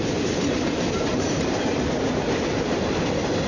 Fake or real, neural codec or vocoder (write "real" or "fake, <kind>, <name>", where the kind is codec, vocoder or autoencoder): fake, vocoder, BigVGAN v2